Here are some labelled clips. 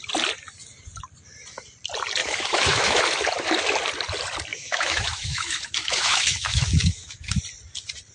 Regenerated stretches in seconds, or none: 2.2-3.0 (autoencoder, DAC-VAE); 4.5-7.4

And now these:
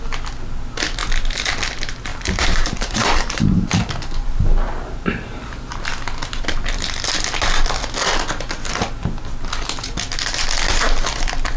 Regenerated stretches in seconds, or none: 2.1-3.9 (vocoder, BigVGAN v2)

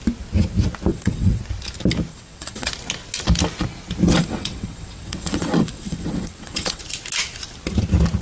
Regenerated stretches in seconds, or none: 0.9-1.4 (vocoder, WaveNeXt); 2.1-2.7; 4.2-6.8

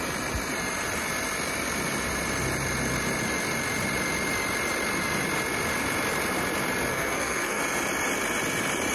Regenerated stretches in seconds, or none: 6.9-7.6 (codec, SNAC)

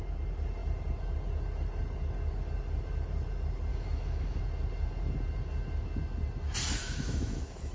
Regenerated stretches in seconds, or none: 3.7-4.4 (autoencoder, DAC-VAE); 6.8-7.7

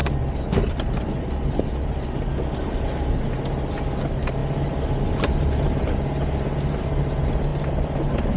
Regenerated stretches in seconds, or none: none

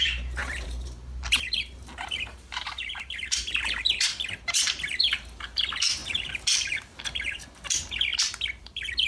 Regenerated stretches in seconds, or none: 0.0-8.1 (vocoder, BigVGAN v2); 8.6-9.1

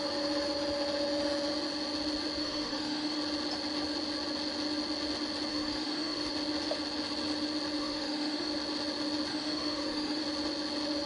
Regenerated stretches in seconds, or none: 2.4-3.2 (autoencoder, DAC-VAE); 5.5-6.3; 7.8-8.5; 9.3-10.2